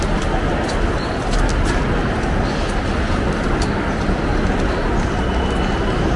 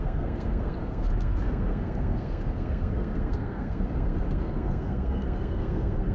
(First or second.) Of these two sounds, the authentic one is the first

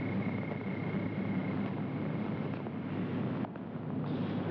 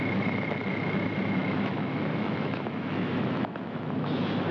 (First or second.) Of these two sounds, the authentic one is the first